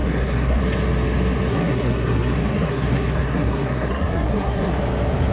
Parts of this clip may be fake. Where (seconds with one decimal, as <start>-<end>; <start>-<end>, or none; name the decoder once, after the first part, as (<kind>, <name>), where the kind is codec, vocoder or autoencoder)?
0.0-0.6 (codec, SNAC); 1.5-4.7